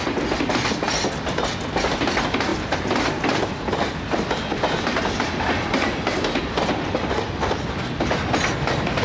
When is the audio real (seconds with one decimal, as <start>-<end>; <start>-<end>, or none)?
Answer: 0.0-9.0